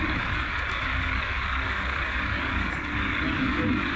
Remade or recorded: remade